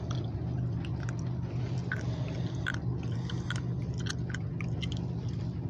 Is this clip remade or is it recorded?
recorded